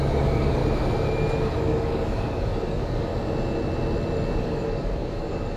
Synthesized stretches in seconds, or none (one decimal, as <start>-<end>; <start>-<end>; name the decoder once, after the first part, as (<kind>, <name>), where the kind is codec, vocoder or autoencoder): 0.0-0.6 (codec, DAC); 1.6-3.1; 4.4-5.6